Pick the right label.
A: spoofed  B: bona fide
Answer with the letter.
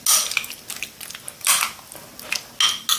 B